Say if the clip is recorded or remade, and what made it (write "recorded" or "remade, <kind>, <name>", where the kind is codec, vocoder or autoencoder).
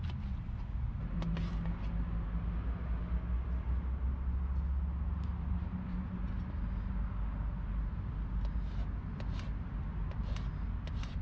recorded